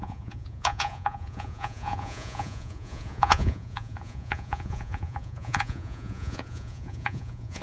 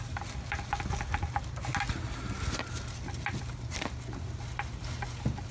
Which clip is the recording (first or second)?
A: second